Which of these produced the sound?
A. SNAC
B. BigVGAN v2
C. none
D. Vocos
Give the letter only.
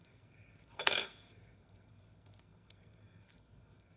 A